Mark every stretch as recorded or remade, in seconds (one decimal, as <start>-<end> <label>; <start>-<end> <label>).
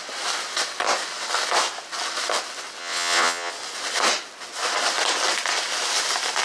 0.0-2.8 recorded; 2.8-3.5 remade; 3.5-6.4 recorded